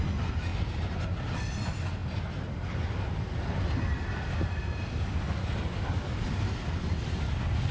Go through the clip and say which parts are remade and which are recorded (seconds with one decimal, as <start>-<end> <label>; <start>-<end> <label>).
0.0-7.7 recorded